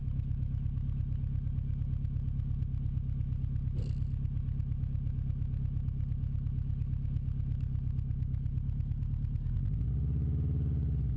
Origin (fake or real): real